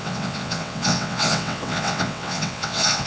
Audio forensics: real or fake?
fake